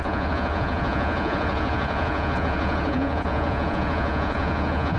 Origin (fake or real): fake